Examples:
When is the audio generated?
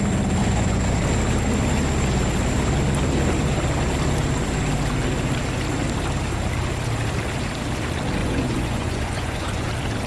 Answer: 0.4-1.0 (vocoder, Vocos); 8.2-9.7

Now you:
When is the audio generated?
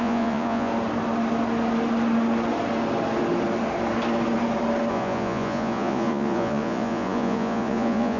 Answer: 0.0-0.7 (vocoder, Vocos); 4.9-8.2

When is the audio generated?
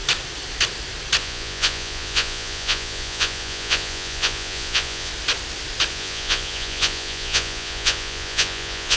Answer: 1.2-5.1 (vocoder, Vocos); 5.9-9.0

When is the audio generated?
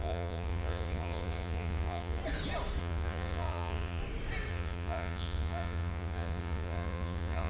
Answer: 0.0-2.2 (vocoder, Vocos); 2.8-4.0; 4.5-7.5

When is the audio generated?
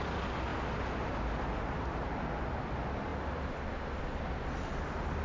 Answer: none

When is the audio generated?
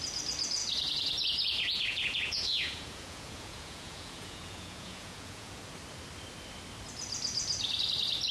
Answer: 0.6-5.6 (vocoder, Vocos)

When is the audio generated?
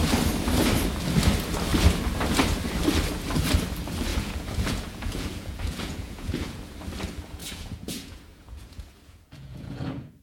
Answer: 4.1-6.6 (vocoder, Vocos); 7.4-10.2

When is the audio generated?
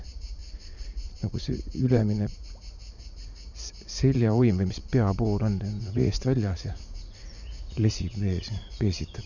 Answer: 0.0-4.8 (vocoder, Vocos); 5.8-9.3